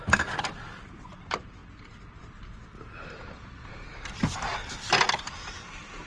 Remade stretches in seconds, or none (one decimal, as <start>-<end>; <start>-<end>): none